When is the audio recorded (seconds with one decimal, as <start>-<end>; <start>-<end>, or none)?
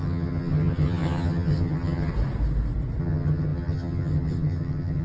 2.1-3.0